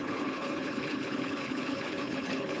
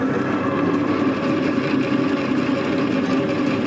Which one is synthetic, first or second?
first